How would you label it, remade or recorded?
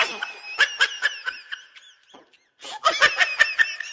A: recorded